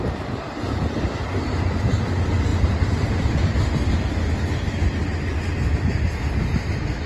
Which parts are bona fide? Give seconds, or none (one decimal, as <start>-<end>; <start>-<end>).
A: 0.0-2.5; 4.7-7.1